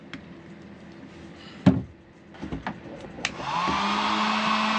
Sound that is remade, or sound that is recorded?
recorded